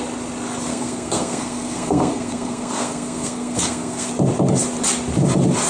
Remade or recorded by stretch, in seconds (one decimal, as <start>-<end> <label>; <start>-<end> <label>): 0.0-0.7 recorded; 0.7-4.1 remade; 4.1-5.7 recorded